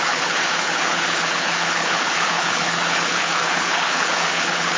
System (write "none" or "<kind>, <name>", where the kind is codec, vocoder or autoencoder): codec, HILCodec